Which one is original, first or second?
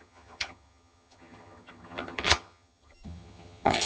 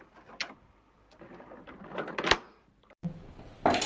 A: second